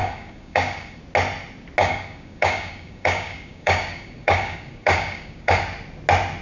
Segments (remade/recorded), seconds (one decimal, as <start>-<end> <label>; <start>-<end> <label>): 0.0-1.0 remade; 1.0-1.8 recorded; 1.8-5.6 remade; 5.6-6.4 recorded